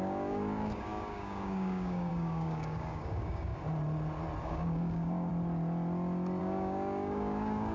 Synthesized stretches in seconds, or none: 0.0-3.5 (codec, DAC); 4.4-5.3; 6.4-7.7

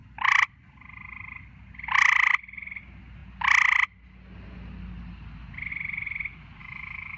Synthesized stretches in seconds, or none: 6.6-7.2 (autoencoder, DAC-VAE)

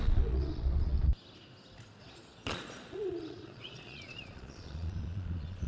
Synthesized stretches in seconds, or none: 0.0-1.1 (vocoder, Vocos); 2.0-5.7

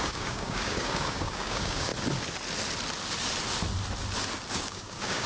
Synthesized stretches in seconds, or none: 0.0-1.9 (codec, DAC); 4.5-5.3

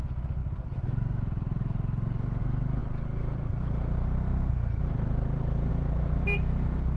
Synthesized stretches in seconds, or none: none

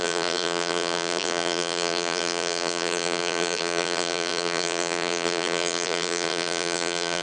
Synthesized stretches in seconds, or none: 0.0-7.2 (vocoder, BigVGAN v2)

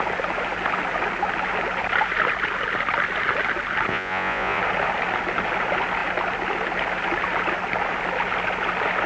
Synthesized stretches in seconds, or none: 3.9-4.6 (vocoder, Vocos)